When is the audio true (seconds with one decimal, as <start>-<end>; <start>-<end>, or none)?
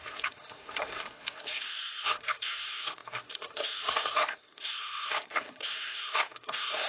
none